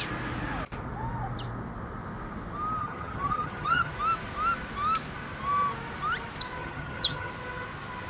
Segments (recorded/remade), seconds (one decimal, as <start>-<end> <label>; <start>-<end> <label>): 0.0-2.8 recorded; 2.8-3.9 remade; 3.9-6.6 recorded; 6.6-7.3 remade; 7.3-8.1 recorded